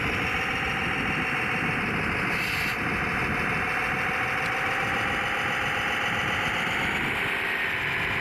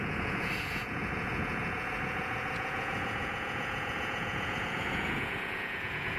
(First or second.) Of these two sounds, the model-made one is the second